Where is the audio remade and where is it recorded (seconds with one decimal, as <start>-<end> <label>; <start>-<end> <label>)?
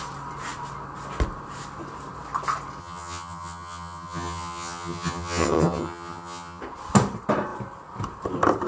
0.0-2.8 recorded; 2.8-6.6 remade; 6.6-8.7 recorded